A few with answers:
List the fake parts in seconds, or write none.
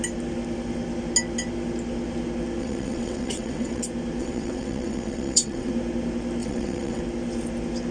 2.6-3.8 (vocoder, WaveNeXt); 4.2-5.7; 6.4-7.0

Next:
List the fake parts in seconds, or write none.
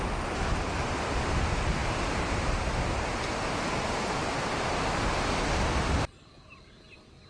none